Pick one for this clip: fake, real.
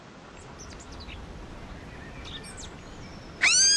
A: real